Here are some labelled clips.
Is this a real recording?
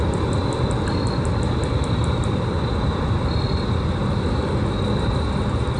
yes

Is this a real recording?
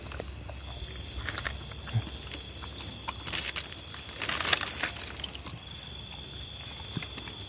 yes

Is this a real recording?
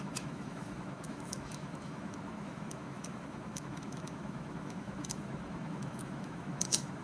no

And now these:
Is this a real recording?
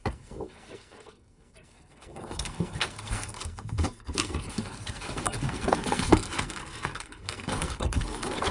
no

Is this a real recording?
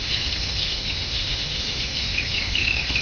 no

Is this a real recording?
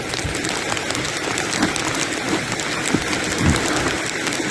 yes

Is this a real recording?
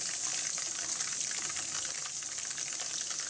yes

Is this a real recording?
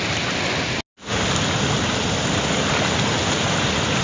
yes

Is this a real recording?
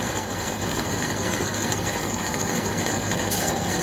no